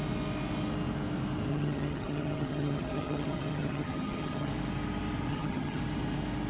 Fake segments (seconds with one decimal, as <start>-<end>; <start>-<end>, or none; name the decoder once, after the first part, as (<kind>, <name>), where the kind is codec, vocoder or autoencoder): 1.5-4.5 (vocoder, HiFi-GAN); 5.3-5.8